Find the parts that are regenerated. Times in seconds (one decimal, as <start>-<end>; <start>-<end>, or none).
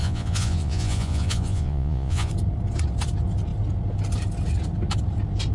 0.0-2.3